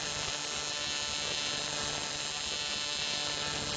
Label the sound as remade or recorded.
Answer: recorded